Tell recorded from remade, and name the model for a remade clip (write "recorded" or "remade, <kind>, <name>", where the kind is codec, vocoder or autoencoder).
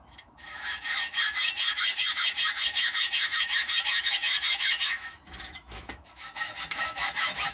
remade, autoencoder, DAC-VAE